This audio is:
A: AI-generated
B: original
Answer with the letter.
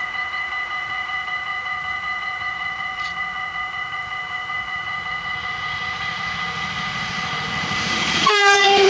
A